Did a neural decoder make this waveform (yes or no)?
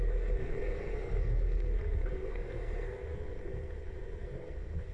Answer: yes